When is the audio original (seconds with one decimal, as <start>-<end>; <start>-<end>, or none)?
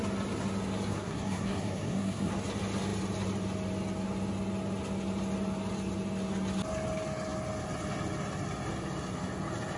0.0-0.9; 2.3-9.8